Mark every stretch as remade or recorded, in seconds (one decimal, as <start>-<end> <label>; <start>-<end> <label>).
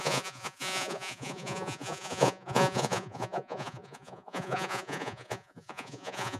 0.0-6.4 remade